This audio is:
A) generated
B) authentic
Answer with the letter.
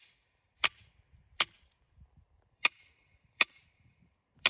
A